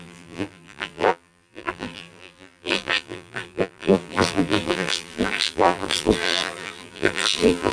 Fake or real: fake